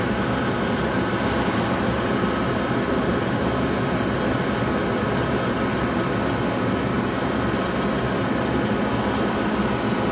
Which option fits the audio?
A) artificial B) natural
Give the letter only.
B